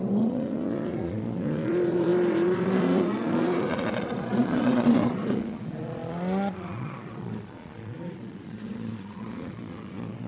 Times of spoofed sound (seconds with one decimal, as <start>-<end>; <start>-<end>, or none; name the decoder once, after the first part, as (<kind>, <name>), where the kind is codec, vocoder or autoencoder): 0.0-10.3 (vocoder, Vocos)